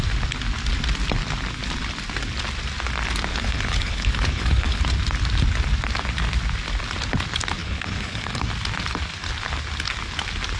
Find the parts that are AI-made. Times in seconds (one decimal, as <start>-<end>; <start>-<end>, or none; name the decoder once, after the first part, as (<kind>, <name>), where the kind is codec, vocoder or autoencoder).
3.3-4.8 (codec, HILCodec); 7.6-8.5